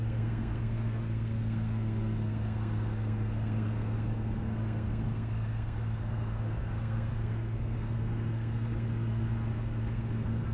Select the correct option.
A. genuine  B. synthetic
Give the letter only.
B